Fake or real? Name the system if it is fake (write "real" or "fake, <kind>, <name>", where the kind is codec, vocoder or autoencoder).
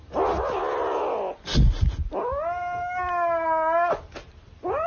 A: real